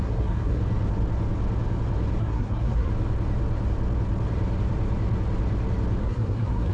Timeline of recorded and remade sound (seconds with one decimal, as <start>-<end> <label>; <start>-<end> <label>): 0.0-0.6 remade; 0.6-2.2 recorded; 2.2-2.9 remade; 2.9-6.0 recorded; 6.0-6.7 remade